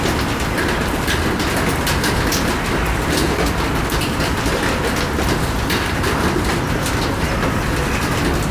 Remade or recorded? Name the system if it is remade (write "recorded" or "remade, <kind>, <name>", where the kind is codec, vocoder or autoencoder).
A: recorded